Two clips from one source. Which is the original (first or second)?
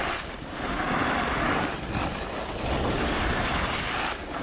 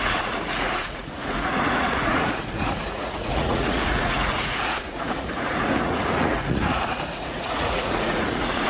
first